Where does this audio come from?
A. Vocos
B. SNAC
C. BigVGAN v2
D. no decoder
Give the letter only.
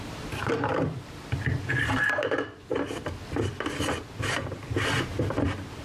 D